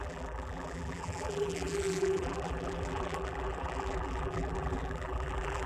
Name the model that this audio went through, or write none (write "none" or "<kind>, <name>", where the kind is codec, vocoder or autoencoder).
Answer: vocoder, BigVGAN v2